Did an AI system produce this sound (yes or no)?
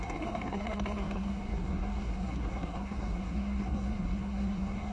yes